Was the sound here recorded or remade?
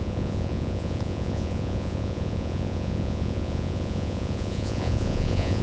remade